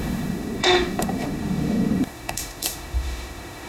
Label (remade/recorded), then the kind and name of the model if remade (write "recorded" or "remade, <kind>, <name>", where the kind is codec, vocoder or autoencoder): remade, autoencoder, DAC-VAE